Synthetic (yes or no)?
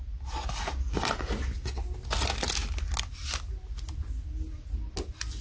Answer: no